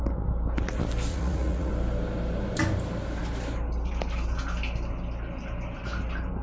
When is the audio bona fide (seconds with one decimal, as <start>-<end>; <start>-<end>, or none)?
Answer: 0.0-1.1; 1.7-6.4